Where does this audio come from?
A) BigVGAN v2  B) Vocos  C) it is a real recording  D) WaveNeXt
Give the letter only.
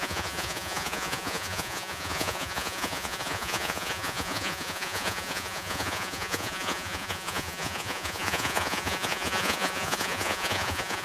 B